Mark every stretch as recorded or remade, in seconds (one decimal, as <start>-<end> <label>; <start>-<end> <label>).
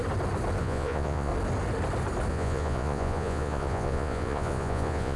0.0-0.6 recorded; 0.6-1.3 remade; 1.3-2.3 recorded; 2.3-5.2 remade